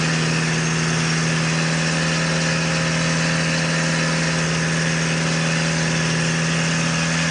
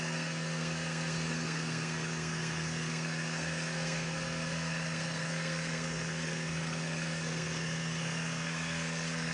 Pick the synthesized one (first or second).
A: second